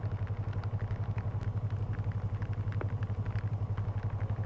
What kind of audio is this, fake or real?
real